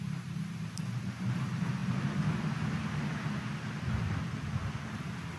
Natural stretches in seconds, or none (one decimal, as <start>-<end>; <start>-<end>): 1.8-4.9